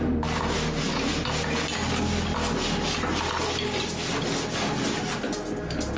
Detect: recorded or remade recorded